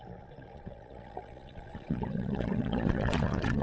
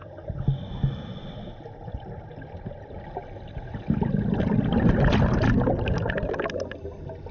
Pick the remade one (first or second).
first